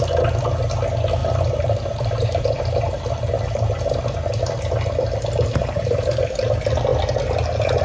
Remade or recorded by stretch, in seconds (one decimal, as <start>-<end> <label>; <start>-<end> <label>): 0.0-1.2 recorded; 1.2-3.0 remade; 3.0-5.6 recorded; 5.6-6.2 remade; 6.2-7.8 recorded